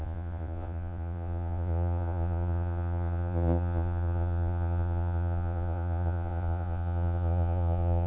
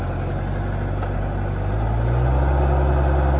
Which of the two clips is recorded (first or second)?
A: second